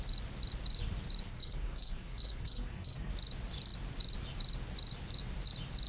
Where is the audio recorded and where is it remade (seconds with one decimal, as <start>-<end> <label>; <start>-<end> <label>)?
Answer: 0.0-1.3 recorded; 1.3-3.1 remade; 3.1-5.9 recorded